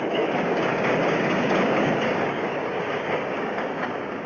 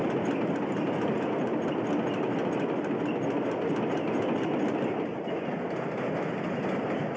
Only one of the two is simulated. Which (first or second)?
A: first